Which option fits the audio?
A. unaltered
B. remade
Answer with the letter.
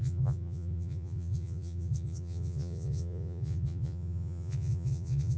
B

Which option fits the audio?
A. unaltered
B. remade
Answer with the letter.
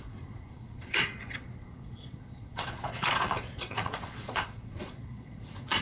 B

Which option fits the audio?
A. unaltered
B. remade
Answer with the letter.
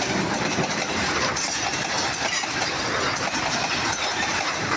A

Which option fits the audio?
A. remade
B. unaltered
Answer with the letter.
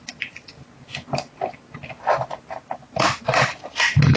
B